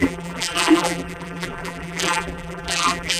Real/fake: fake